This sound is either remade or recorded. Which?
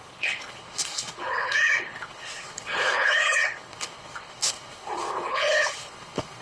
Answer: remade